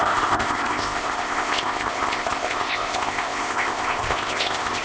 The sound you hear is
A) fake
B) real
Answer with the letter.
A